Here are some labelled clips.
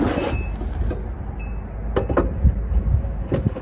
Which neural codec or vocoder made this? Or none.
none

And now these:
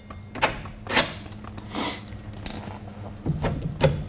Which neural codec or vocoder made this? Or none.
none